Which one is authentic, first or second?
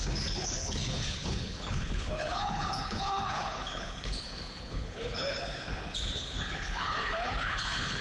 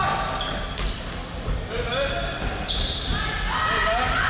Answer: second